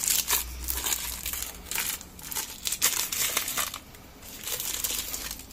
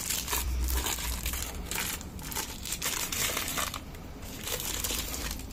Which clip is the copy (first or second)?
second